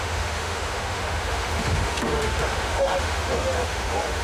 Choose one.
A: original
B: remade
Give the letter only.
B